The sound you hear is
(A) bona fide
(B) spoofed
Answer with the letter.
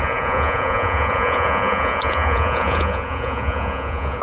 B